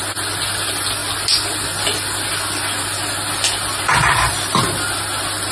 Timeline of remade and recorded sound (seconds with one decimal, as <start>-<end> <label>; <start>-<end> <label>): 0.0-5.5 recorded